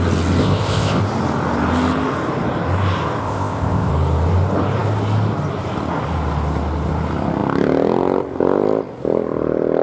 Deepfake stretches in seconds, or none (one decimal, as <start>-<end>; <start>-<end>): 0.4-1.0; 3.2-3.9